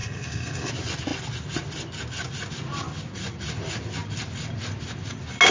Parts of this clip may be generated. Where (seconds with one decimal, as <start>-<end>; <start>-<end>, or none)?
0.0-0.7